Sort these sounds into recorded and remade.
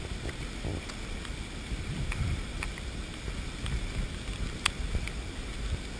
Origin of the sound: recorded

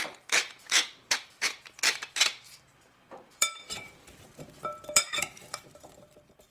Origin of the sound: remade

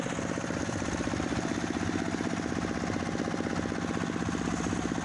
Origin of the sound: recorded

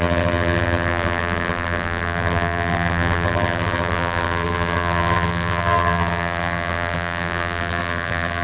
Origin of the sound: remade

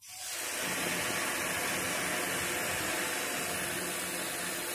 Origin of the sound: recorded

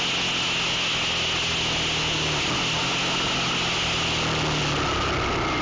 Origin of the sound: recorded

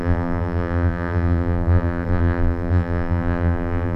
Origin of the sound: remade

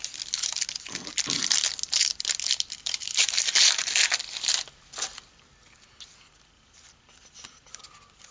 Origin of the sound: recorded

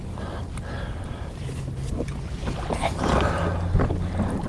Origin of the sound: recorded